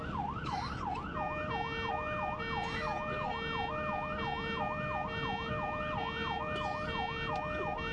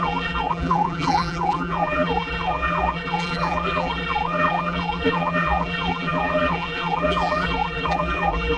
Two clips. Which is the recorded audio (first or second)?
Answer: first